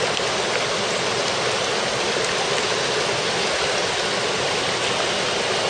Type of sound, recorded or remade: recorded